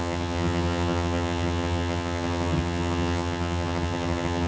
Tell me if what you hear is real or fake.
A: fake